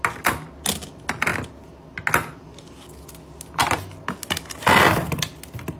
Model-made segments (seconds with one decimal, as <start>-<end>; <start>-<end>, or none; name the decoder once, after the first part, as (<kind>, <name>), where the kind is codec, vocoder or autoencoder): none